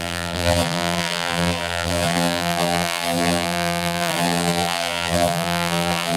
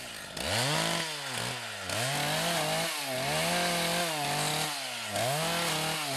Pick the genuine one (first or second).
second